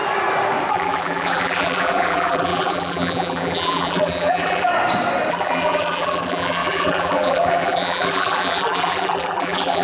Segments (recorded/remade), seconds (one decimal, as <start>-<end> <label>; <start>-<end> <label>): 0.0-0.7 recorded; 0.7-4.7 remade; 4.7-5.3 recorded; 5.3-9.8 remade